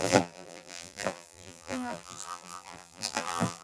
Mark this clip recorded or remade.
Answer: remade